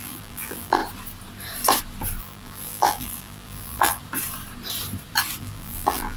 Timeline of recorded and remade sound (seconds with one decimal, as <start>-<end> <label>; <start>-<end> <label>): 0.0-0.8 remade; 0.8-2.2 recorded; 2.2-4.0 remade; 4.0-5.4 recorded; 5.4-6.2 remade